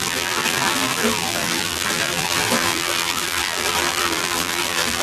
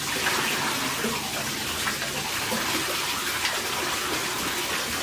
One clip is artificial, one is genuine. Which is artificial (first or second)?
first